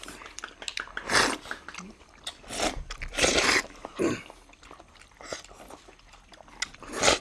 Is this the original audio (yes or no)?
yes